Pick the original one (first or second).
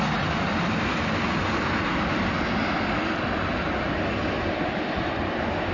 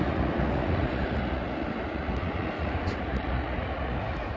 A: first